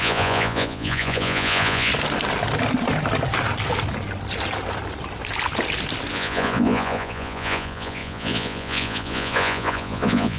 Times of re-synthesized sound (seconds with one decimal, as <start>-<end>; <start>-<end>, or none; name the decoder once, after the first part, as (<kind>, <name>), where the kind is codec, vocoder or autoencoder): 0.0-1.9 (vocoder, Vocos); 6.1-10.4

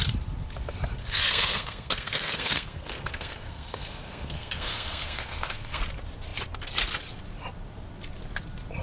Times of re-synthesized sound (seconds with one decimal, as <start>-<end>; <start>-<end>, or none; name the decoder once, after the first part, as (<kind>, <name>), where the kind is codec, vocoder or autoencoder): 1.0-5.8 (codec, SNAC)

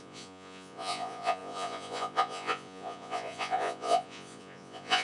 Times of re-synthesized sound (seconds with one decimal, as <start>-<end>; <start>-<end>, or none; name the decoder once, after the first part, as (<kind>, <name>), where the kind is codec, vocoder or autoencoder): 0.0-5.0 (vocoder, Vocos)